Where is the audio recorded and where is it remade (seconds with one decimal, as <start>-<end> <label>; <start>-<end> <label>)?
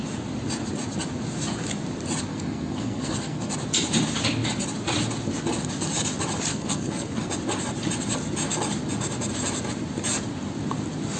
0.0-2.3 recorded; 2.3-3.5 remade; 3.5-6.5 recorded; 6.5-7.3 remade; 7.3-11.2 recorded